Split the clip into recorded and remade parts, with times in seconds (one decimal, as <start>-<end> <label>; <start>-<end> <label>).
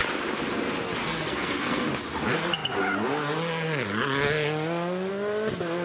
0.0-1.0 recorded; 1.0-1.9 remade; 1.9-5.8 recorded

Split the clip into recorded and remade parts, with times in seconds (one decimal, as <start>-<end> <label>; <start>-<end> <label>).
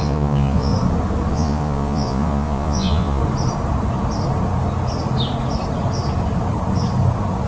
0.0-0.7 remade; 0.7-1.3 recorded; 1.3-3.2 remade; 3.2-7.5 recorded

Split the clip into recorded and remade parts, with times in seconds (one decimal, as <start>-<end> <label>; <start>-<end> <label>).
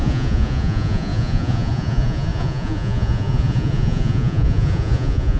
0.0-5.4 remade